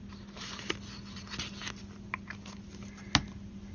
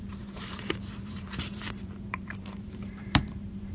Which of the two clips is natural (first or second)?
first